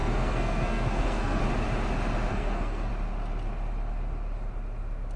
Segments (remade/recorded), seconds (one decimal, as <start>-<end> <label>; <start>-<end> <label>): 0.0-1.4 remade; 1.4-2.3 recorded; 2.3-2.9 remade; 2.9-5.2 recorded